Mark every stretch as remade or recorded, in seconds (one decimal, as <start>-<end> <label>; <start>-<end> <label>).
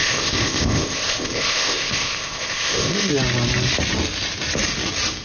0.0-3.1 remade; 3.1-5.2 recorded